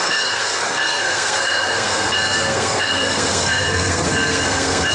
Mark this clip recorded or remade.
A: remade